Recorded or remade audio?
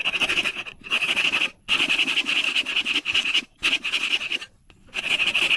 remade